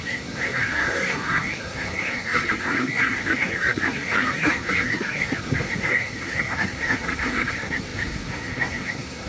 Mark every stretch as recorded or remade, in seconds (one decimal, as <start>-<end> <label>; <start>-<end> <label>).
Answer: 0.0-9.3 remade